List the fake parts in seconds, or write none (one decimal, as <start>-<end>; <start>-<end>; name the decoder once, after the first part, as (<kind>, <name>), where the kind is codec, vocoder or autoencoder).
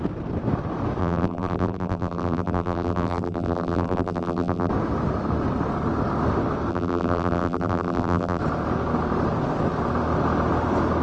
1.0-4.7 (vocoder, BigVGAN v2); 6.7-8.4